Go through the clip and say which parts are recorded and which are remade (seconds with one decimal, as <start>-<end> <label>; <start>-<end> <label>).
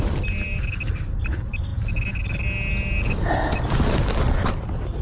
0.0-5.0 recorded